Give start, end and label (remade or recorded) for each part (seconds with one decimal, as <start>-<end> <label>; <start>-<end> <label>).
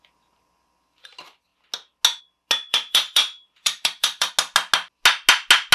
0.0-2.7 recorded; 2.7-4.3 remade; 4.3-5.7 recorded